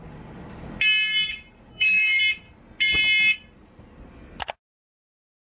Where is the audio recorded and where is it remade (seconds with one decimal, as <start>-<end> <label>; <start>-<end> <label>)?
0.0-1.7 recorded; 1.7-2.2 remade; 2.2-5.5 recorded

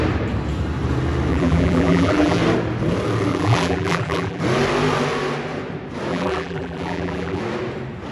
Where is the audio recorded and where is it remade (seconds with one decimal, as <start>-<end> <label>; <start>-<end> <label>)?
0.0-1.3 recorded; 1.3-2.4 remade; 2.4-3.3 recorded; 3.3-4.4 remade; 4.4-6.1 recorded; 6.1-7.4 remade; 7.4-8.1 recorded

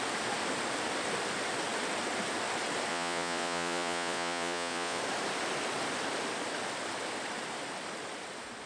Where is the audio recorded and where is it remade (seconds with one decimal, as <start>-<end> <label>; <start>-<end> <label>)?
0.0-2.9 recorded; 2.9-5.0 remade; 5.0-8.7 recorded

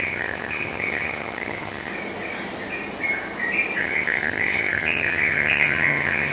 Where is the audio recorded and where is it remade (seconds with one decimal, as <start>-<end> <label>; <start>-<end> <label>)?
0.0-1.9 remade; 1.9-3.8 recorded; 3.8-6.3 remade

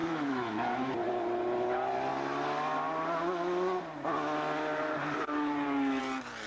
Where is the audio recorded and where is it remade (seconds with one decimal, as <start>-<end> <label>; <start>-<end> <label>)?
0.0-0.9 remade; 0.9-6.5 recorded

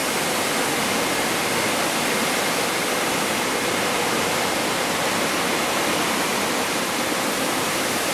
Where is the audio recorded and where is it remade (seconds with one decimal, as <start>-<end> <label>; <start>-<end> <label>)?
0.0-8.1 remade